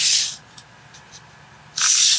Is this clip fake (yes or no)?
no